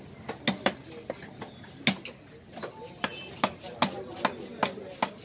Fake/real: real